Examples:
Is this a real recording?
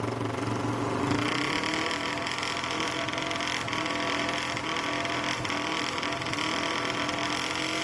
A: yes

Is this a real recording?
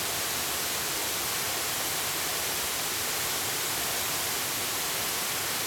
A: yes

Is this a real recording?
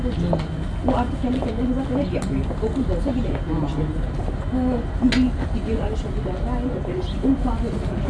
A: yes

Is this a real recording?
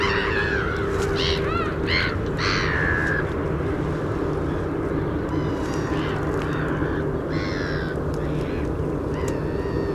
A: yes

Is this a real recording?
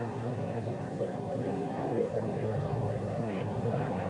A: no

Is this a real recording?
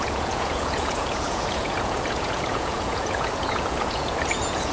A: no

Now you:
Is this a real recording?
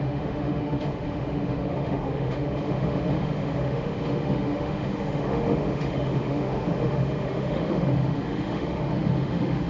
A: no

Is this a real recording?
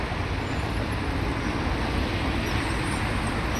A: yes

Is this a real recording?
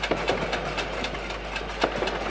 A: yes